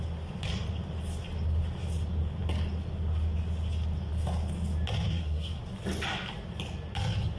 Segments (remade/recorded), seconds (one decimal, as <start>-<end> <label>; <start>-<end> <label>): 0.0-5.1 recorded; 5.1-5.6 remade; 5.6-7.4 recorded